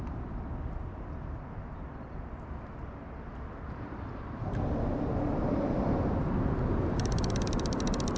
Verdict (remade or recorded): recorded